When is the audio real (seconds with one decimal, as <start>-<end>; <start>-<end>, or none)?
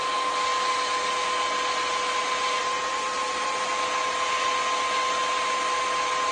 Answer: 0.0-2.6; 3.6-6.3